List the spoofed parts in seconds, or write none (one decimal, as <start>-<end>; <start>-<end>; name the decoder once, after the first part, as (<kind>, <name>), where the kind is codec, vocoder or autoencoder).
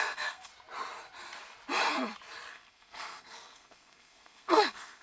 0.0-0.5 (codec, SNAC); 2.5-5.0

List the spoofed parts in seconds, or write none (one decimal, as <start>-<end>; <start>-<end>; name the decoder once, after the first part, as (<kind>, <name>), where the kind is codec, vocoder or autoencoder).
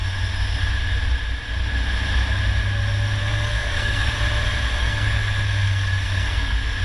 3.2-4.1 (codec, SNAC); 4.8-6.8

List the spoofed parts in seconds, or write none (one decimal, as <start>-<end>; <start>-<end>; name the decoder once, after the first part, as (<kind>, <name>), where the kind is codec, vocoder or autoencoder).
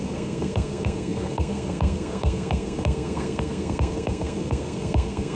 0.0-5.4 (codec, SNAC)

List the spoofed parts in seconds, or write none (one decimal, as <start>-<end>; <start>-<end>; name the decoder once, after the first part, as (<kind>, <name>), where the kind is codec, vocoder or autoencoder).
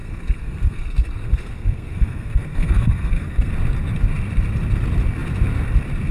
0.0-3.5 (codec, SNAC)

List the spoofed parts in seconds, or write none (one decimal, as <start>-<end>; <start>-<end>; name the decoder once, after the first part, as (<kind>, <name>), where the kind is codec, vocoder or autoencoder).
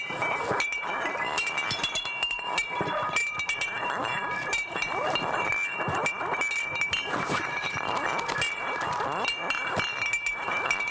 none